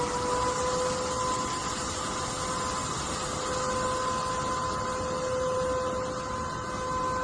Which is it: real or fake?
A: real